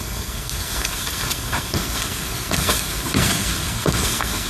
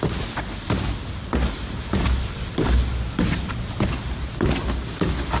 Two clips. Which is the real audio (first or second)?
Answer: second